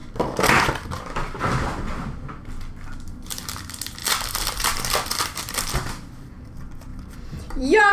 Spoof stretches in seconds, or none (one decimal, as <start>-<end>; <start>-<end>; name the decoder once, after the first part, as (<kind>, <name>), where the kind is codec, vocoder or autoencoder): 4.0-5.4 (vocoder, BigVGAN v2); 6.9-7.9